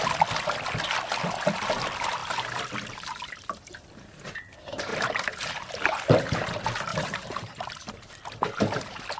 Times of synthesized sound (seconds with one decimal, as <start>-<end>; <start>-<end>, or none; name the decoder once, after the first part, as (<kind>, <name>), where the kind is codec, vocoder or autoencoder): 4.9-6.4 (vocoder, BigVGAN v2); 6.9-7.7